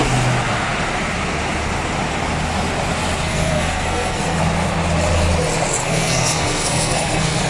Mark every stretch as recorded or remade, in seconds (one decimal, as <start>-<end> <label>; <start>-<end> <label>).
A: 0.0-3.3 recorded; 3.3-4.4 remade; 4.4-5.8 recorded; 5.8-7.5 remade